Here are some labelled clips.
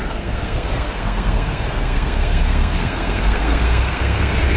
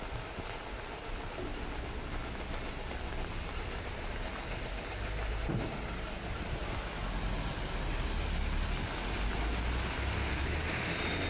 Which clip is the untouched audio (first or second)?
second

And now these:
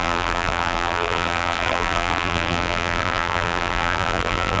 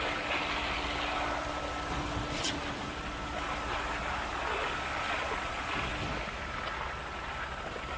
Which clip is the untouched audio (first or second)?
second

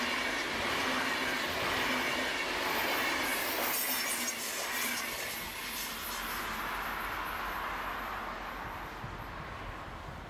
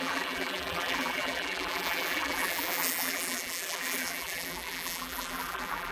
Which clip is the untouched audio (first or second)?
first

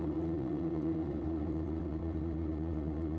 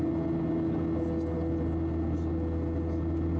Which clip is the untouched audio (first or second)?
second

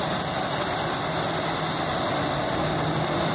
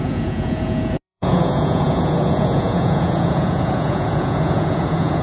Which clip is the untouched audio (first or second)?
first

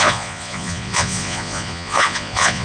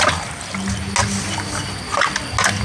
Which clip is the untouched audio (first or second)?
second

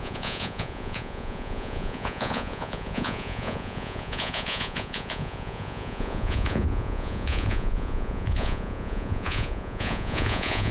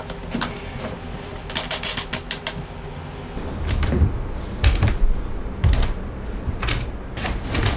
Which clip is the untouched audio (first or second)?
second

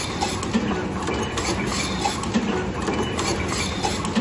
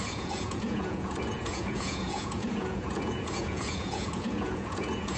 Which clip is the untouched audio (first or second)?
first